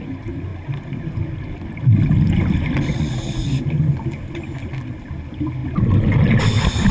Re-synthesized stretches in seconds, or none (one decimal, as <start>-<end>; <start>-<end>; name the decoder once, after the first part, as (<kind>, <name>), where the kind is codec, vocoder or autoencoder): 2.9-3.6 (vocoder, Vocos)